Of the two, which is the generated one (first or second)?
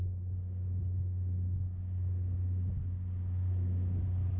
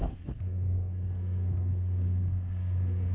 second